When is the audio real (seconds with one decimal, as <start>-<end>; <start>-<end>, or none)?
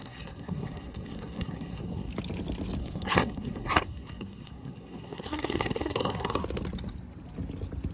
2.1-2.8; 6.4-7.9